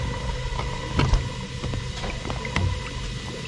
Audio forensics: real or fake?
real